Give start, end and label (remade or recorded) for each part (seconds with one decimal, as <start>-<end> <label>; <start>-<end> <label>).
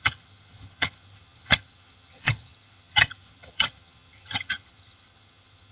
0.0-5.7 remade